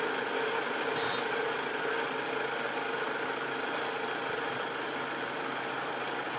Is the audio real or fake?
real